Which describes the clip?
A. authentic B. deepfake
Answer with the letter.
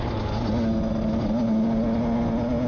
A